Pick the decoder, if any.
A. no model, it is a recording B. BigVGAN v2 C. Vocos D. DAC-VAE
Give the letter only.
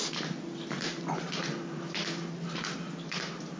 A